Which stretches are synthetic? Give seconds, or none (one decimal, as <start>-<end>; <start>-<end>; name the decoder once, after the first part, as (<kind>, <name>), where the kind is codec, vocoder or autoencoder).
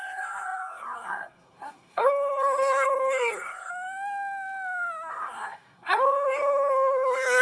0.0-3.7 (codec, SNAC); 5.1-7.4